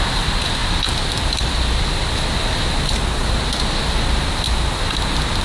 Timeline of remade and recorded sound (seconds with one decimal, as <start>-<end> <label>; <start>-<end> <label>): 0.0-5.4 recorded